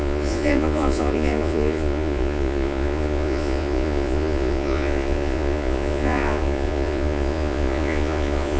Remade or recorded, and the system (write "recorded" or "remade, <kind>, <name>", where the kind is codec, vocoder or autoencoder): remade, vocoder, Vocos